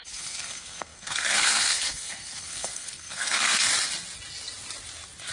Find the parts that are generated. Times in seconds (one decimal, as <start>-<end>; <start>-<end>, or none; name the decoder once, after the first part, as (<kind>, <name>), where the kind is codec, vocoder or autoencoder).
0.0-3.7 (codec, SNAC)